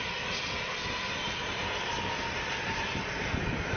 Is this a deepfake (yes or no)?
no